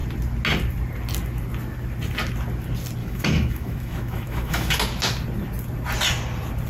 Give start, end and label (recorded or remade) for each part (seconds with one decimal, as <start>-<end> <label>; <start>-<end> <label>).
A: 0.0-3.0 recorded; 3.0-4.7 remade; 4.7-6.7 recorded